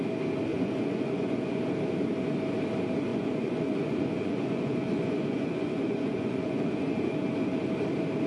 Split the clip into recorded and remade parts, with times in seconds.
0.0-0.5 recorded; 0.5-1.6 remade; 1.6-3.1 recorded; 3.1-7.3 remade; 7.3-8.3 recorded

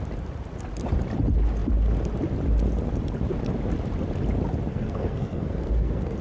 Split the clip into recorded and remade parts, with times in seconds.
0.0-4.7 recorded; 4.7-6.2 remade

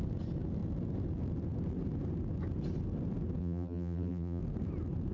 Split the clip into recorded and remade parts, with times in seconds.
0.0-3.4 recorded; 3.4-4.4 remade; 4.4-5.1 recorded

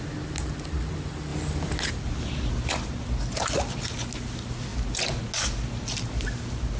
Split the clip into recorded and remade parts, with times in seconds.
0.0-6.8 recorded

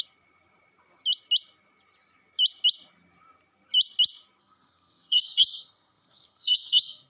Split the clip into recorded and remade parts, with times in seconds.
0.0-4.4 recorded; 4.4-7.1 remade

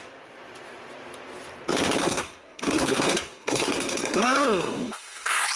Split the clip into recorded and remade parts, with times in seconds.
0.0-2.0 recorded; 2.0-5.6 remade

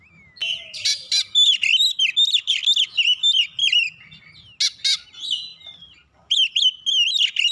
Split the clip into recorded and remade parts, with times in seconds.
0.0-0.4 recorded; 0.4-1.3 remade; 1.3-5.5 recorded; 5.5-6.5 remade; 6.5-7.5 recorded

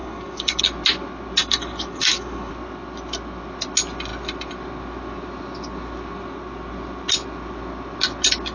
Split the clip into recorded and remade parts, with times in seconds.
0.0-0.6 remade; 0.6-1.4 recorded; 1.4-2.5 remade; 2.5-8.5 recorded